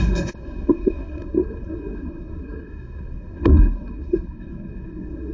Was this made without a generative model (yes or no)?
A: no